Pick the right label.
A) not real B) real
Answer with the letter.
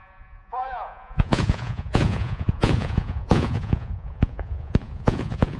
A